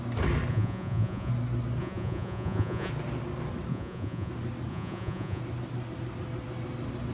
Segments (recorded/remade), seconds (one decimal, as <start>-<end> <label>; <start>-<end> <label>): 0.0-0.5 recorded; 0.5-1.3 remade; 1.3-1.8 recorded; 1.8-2.9 remade; 2.9-3.7 recorded; 3.7-4.3 remade; 4.3-4.7 recorded; 4.7-5.4 remade; 5.4-7.1 recorded

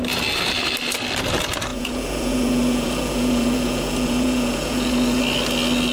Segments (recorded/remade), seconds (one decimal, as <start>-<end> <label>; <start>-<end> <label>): 0.0-1.7 recorded; 1.7-5.2 remade; 5.2-5.9 recorded

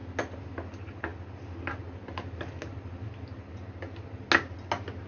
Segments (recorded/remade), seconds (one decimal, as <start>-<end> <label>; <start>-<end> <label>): 0.0-5.1 recorded

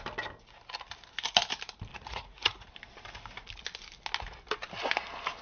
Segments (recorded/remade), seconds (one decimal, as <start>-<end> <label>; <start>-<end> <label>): 0.0-1.9 recorded; 1.9-2.7 remade; 2.7-5.4 recorded

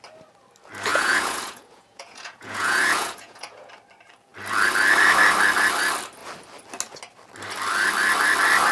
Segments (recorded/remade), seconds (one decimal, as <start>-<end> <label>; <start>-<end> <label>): 0.0-0.9 recorded; 0.9-3.7 remade; 3.7-8.7 recorded

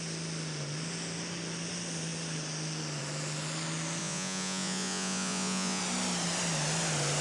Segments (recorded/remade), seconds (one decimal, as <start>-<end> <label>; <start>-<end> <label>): 0.0-4.0 recorded; 4.0-5.8 remade; 5.8-7.2 recorded

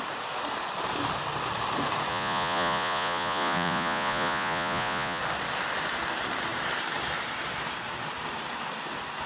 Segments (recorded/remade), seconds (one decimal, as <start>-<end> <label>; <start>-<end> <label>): 0.0-2.1 recorded; 2.1-5.2 remade; 5.2-9.3 recorded

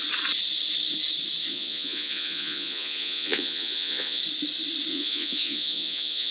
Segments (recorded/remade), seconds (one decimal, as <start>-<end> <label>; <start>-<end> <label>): 0.0-1.5 recorded; 1.5-4.2 remade; 4.2-4.9 recorded; 4.9-6.3 remade